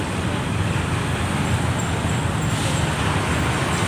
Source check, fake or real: real